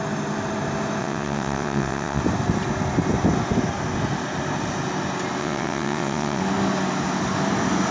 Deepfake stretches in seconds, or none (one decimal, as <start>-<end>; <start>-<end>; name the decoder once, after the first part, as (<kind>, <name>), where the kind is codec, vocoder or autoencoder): 1.0-2.2 (vocoder, WaveNeXt); 5.4-6.4